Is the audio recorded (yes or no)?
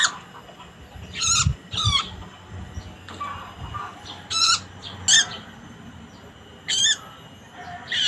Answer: yes